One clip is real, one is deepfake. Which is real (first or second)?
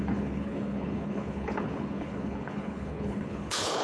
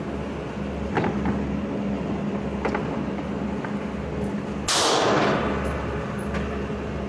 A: second